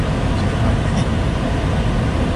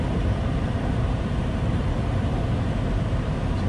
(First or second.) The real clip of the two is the first